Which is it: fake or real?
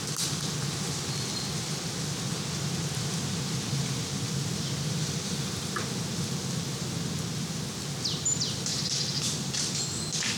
real